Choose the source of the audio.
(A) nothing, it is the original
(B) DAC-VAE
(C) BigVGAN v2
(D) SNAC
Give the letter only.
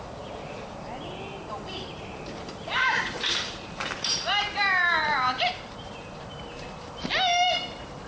C